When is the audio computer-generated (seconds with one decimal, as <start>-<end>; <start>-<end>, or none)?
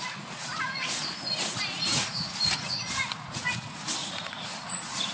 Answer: 0.5-3.5; 4.0-5.1